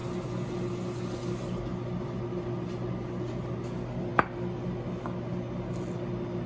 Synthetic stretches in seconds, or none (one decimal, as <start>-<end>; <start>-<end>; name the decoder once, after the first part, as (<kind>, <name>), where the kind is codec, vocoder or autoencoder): none